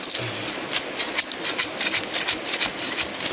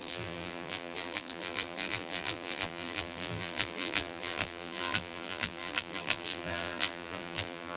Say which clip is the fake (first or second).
second